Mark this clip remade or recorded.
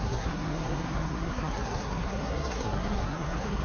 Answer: remade